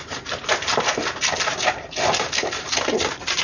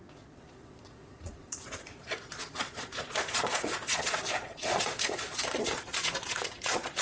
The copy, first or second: second